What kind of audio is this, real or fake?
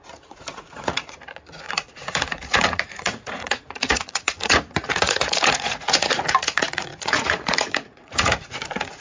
fake